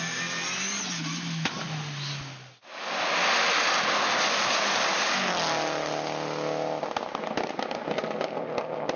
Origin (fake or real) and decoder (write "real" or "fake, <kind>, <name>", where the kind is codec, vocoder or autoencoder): real